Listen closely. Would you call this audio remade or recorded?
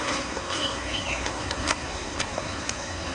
remade